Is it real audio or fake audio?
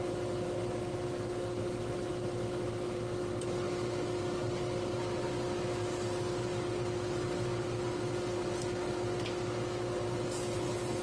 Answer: real